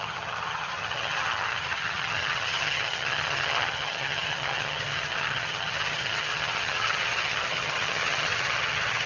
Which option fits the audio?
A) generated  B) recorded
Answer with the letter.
A